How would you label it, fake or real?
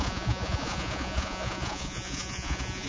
fake